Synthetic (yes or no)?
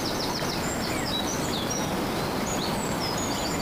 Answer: no